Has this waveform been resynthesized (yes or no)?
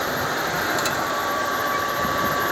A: no